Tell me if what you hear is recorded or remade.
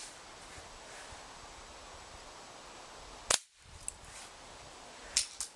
recorded